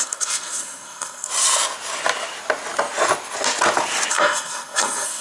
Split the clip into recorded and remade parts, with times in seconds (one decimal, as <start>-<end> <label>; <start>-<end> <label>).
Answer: 0.0-1.3 remade; 1.3-4.1 recorded; 4.1-5.2 remade